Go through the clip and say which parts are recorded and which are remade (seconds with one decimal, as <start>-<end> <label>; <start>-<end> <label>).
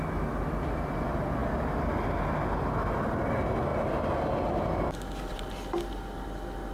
0.0-6.7 recorded